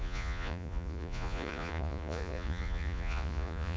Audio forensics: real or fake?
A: fake